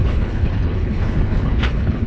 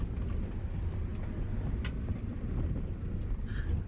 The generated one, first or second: first